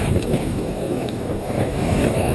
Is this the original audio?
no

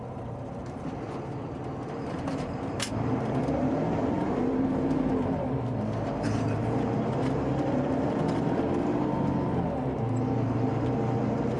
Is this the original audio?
no